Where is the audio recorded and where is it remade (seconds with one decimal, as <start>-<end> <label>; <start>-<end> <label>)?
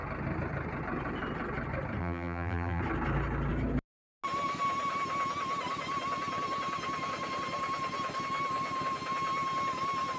0.0-2.0 recorded; 2.0-2.8 remade; 2.8-10.2 recorded